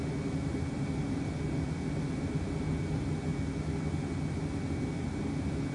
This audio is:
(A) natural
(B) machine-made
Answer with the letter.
A